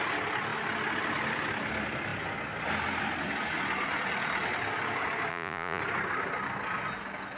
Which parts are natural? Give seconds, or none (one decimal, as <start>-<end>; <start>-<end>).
0.0-5.3; 5.8-7.4